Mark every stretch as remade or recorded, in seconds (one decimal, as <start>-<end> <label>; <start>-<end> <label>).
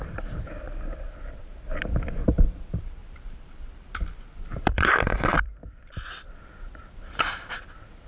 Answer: 0.0-3.0 recorded; 3.0-6.0 remade; 6.0-6.8 recorded; 6.8-8.1 remade